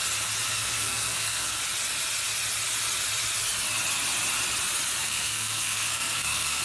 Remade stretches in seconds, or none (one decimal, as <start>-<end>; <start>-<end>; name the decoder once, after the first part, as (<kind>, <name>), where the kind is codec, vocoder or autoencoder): 0.5-1.6 (codec, SNAC); 5.0-6.6